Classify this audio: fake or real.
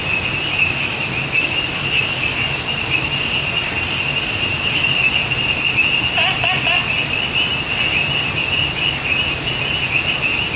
real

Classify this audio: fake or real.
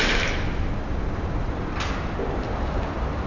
real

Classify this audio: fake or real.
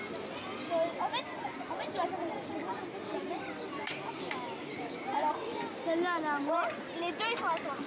real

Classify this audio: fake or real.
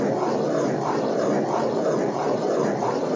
real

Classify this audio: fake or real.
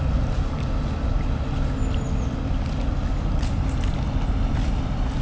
real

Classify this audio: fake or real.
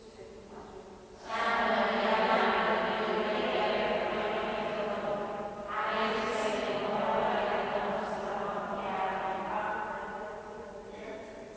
real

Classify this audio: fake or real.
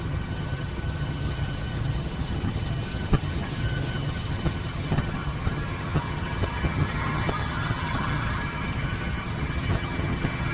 fake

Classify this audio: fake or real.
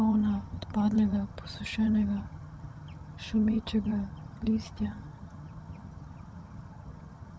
fake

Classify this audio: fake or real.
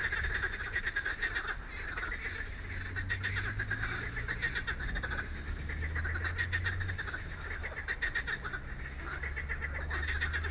real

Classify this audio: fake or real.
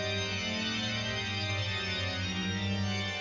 real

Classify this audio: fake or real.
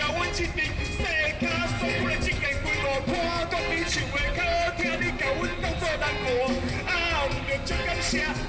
real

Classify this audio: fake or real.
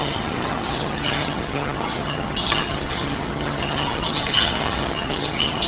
fake